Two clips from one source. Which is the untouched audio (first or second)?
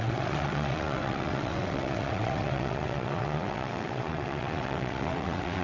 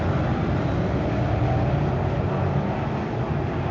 second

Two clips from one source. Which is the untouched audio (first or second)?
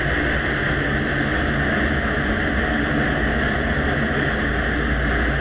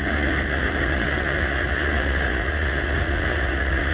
first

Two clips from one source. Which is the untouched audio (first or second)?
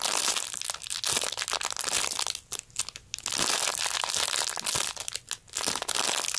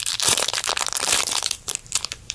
first